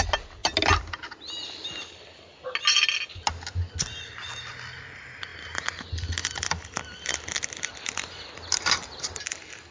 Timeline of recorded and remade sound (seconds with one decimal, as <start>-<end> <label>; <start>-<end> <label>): 0.0-9.7 recorded